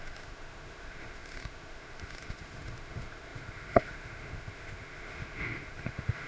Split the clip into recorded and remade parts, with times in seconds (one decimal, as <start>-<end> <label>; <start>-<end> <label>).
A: 0.0-6.3 remade